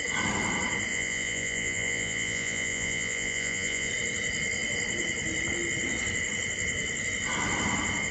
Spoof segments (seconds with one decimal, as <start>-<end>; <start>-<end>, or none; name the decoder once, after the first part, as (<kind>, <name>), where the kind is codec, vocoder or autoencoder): 0.9-3.9 (vocoder, Vocos)